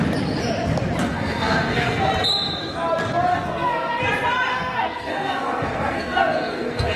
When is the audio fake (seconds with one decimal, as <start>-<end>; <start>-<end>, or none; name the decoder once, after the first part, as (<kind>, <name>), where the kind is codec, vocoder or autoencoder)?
1.0-2.1 (codec, SNAC); 3.3-4.0; 4.5-7.0